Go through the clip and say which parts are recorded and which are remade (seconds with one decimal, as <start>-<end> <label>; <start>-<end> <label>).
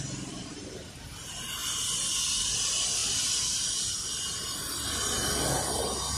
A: 0.0-6.2 recorded